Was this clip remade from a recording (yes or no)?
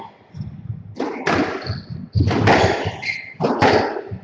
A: no